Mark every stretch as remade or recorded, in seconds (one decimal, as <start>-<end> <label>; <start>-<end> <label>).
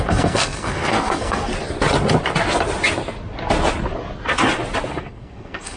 0.0-1.5 remade; 1.5-5.0 recorded; 5.0-5.8 remade